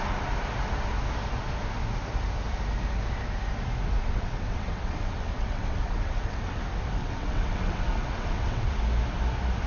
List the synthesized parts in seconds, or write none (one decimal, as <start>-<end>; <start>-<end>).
4.0-6.6; 7.0-8.8